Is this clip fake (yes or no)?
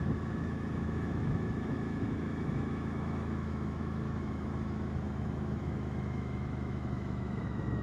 yes